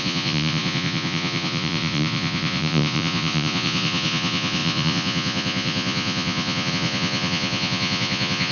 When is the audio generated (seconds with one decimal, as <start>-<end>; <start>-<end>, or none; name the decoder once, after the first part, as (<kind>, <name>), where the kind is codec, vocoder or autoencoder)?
0.0-8.5 (vocoder, Vocos)